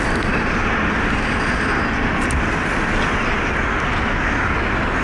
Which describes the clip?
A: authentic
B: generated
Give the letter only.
A